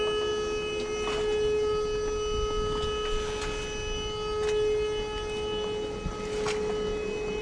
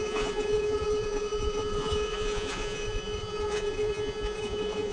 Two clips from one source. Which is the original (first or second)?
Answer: first